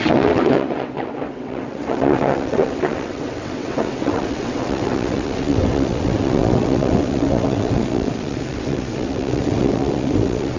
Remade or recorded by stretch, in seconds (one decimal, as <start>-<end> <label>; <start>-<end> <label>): 0.0-10.6 remade